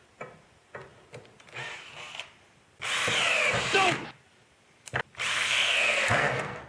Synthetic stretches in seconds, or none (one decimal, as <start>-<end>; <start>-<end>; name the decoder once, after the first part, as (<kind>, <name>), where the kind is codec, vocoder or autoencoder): 5.3-6.7 (codec, SNAC)